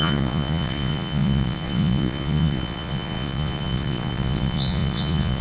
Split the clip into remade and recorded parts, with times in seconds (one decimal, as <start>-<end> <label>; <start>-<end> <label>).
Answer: 0.0-5.4 remade